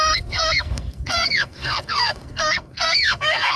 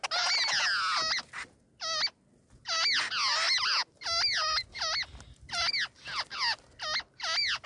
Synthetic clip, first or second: first